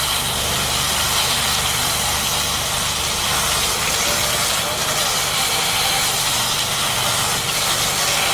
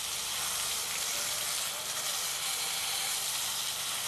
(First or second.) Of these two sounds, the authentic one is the first